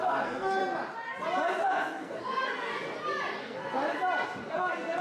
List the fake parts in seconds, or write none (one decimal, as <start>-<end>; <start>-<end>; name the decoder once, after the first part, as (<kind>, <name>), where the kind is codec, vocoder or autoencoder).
0.0-0.6 (codec, SNAC); 1.6-2.7; 3.4-3.8; 4.5-5.0